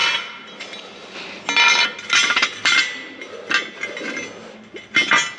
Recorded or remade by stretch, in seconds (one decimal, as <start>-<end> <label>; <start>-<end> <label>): 0.0-5.4 recorded

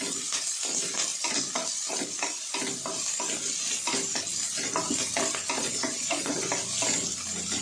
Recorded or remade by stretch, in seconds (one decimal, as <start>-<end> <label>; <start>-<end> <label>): 0.0-5.6 recorded; 5.6-6.5 remade; 6.5-7.6 recorded

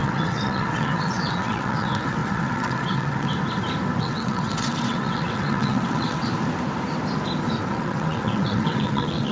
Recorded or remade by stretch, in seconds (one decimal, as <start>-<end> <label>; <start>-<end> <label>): 0.0-3.3 remade; 3.3-4.0 recorded; 4.0-6.3 remade; 6.3-7.7 recorded; 7.7-9.3 remade

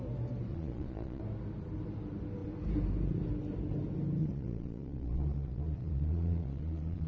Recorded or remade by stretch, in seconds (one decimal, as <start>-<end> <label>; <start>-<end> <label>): 0.0-0.5 recorded; 0.5-1.2 remade; 1.2-4.2 recorded; 4.2-7.1 remade

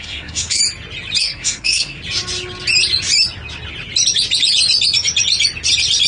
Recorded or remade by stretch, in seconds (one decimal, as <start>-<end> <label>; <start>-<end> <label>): 0.0-0.6 remade; 0.6-1.2 recorded; 1.2-2.0 remade; 2.0-6.1 recorded

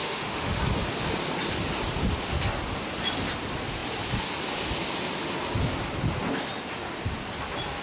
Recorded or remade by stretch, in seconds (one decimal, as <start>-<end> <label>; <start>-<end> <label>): 0.0-0.6 remade; 0.6-7.8 recorded